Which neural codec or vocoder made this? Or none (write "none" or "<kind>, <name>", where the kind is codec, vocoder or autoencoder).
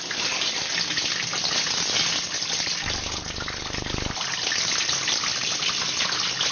none